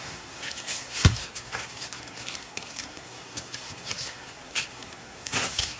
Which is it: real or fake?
fake